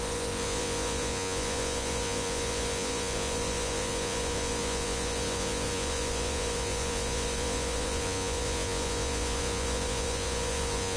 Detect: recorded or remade remade